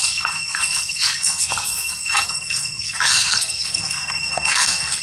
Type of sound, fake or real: fake